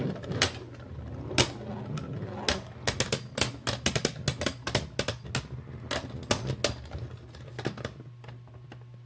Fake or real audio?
real